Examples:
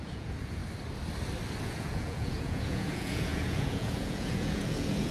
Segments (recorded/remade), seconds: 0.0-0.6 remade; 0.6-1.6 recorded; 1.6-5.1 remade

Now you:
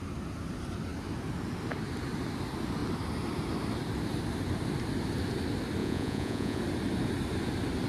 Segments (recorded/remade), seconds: 0.0-5.8 recorded; 5.8-6.6 remade; 6.6-7.9 recorded

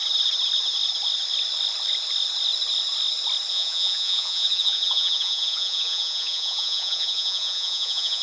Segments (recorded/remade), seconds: 0.0-3.5 recorded; 3.5-8.2 remade

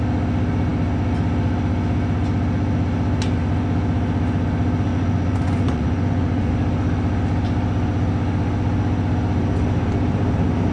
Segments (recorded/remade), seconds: 0.0-4.9 recorded; 4.9-6.5 remade; 6.5-10.7 recorded

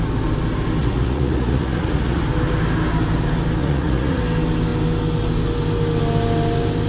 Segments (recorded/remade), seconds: 0.0-0.8 recorded; 0.8-2.2 remade; 2.2-3.6 recorded; 3.6-4.2 remade; 4.2-6.9 recorded

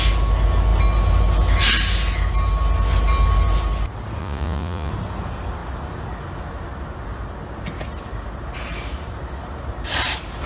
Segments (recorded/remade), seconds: 0.0-4.2 recorded; 4.2-4.9 remade; 4.9-10.5 recorded